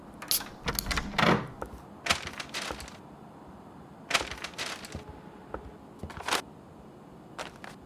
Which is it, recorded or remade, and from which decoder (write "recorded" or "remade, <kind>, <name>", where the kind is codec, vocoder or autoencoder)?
recorded